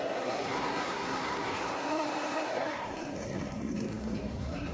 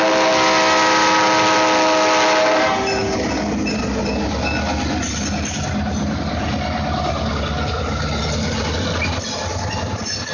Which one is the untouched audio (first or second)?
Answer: second